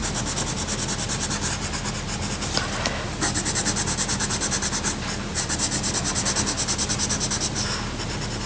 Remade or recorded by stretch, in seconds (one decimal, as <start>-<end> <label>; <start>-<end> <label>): 0.0-8.5 recorded